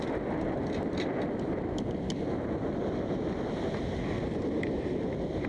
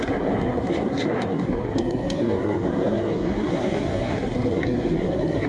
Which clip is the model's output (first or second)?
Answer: second